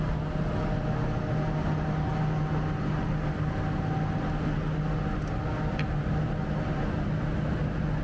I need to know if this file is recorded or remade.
recorded